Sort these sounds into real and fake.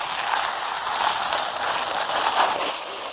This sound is real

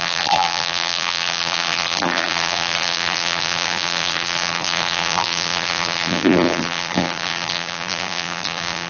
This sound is fake